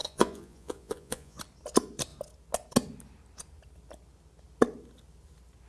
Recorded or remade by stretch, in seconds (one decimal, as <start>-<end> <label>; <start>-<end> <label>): 0.0-1.4 remade; 1.4-5.7 recorded